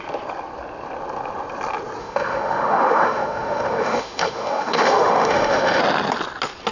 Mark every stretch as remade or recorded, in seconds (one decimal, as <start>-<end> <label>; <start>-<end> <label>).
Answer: 0.0-2.0 recorded; 2.0-5.8 remade; 5.8-6.7 recorded